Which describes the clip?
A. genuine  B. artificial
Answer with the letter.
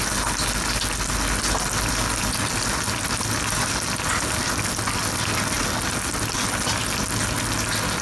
A